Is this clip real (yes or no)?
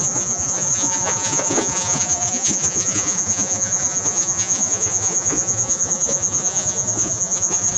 no